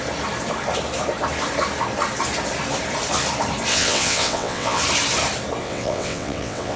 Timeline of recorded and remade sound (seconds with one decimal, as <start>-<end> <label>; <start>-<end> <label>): 0.0-3.7 recorded; 3.7-4.8 remade; 4.8-5.6 recorded; 5.6-6.8 remade